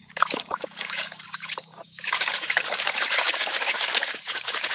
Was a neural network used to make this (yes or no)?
yes